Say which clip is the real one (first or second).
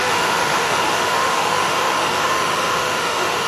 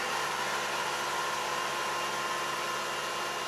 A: second